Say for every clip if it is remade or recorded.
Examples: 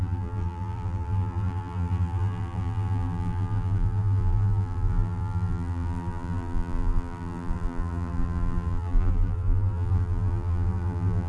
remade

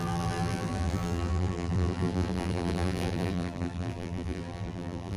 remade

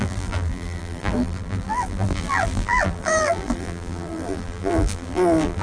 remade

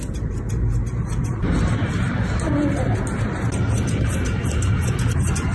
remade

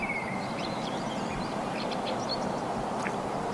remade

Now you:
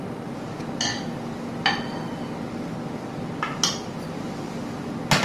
recorded